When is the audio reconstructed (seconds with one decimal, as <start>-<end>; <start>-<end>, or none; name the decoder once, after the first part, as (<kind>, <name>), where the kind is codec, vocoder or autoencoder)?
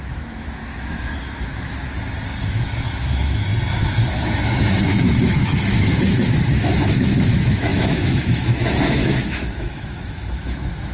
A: 0.0-1.9 (autoencoder, DAC-VAE); 2.5-3.5; 4.1-10.9